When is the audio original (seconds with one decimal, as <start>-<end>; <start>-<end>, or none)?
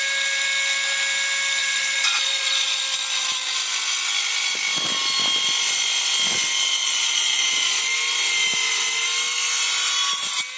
0.0-1.6; 2.8-6.8; 7.8-10.6